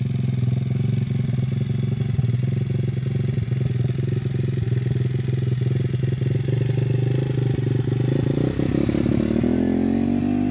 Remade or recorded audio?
recorded